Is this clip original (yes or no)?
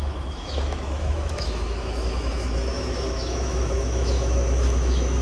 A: no